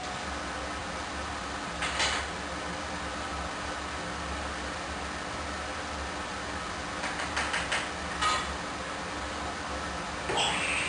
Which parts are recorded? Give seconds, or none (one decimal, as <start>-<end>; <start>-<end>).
0.0-10.9